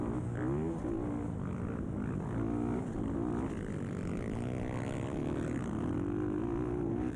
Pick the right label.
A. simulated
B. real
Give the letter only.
B